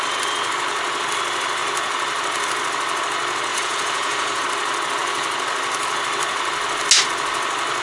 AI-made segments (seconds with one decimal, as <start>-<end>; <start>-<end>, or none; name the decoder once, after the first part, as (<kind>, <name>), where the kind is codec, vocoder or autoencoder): 3.5-4.4 (vocoder, Vocos)

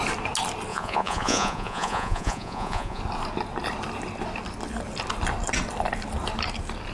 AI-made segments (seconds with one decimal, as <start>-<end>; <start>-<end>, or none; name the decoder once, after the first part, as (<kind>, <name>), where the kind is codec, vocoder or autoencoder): 0.7-3.0 (vocoder, Vocos)

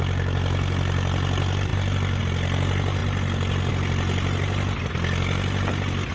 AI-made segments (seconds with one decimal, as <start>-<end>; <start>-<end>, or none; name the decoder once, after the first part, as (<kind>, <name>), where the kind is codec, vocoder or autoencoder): none

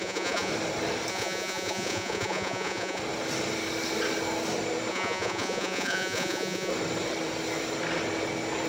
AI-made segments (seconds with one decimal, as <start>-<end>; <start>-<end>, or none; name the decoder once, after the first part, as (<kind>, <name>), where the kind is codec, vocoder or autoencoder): 0.0-0.5 (vocoder, Vocos); 1.1-3.0; 4.9-6.7

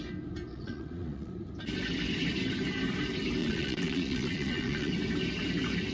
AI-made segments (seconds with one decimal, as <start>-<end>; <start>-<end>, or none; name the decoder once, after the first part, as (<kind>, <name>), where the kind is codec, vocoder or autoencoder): 0.5-1.3 (vocoder, Vocos); 3.4-4.9

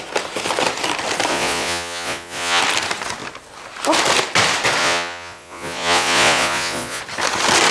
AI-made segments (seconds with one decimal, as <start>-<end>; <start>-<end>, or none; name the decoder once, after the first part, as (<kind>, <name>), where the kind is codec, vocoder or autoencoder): 1.3-2.6 (vocoder, Vocos); 4.8-7.0

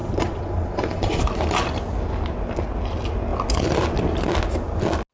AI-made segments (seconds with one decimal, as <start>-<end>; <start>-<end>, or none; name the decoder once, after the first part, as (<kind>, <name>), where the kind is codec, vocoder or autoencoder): 0.0-1.2 (vocoder, Vocos)

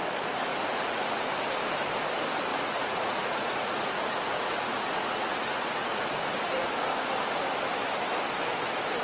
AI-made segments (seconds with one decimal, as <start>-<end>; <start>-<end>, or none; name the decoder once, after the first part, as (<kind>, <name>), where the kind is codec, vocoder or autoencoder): 0.5-1.3 (vocoder, Vocos); 2.5-6.0